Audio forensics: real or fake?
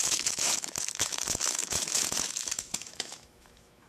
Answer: fake